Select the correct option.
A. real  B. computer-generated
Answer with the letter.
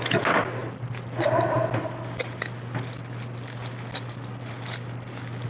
A